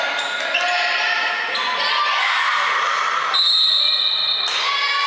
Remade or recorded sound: recorded